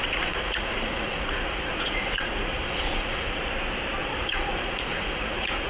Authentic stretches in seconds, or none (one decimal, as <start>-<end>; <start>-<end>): 3.4-4.0